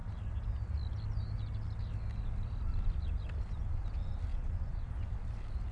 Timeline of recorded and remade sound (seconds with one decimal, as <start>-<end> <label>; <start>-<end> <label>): 0.0-4.3 recorded; 4.3-4.9 remade; 4.9-5.7 recorded